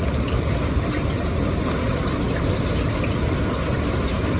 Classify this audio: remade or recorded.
recorded